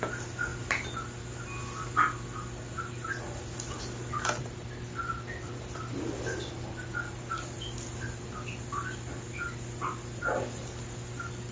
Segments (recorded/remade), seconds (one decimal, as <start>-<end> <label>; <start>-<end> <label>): 0.0-11.5 recorded